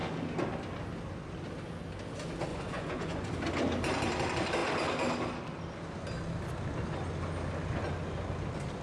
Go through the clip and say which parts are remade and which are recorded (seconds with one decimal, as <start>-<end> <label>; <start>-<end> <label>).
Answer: 0.0-2.5 recorded; 2.5-3.3 remade; 3.3-8.8 recorded